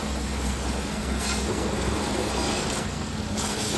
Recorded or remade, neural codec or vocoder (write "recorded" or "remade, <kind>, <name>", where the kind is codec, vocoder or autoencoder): remade, codec, SNAC